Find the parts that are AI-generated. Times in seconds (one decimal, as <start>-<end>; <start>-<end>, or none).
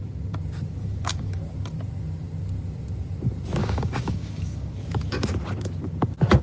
0.8-1.4; 3.6-4.7